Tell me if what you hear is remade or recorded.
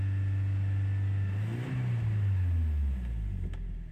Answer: recorded